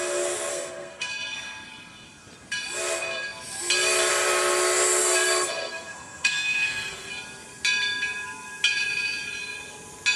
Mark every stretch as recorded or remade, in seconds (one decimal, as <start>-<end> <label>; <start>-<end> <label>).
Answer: 0.0-0.5 recorded; 0.5-1.1 remade; 1.1-5.0 recorded; 5.0-7.1 remade; 7.1-10.2 recorded